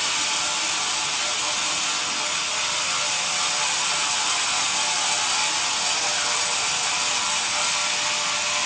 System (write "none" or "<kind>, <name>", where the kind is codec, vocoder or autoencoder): none